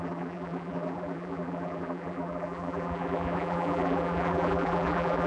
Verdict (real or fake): fake